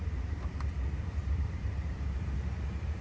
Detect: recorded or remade remade